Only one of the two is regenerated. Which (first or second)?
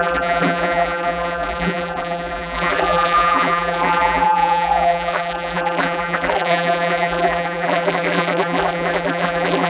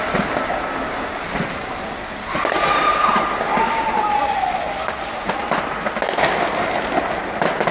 first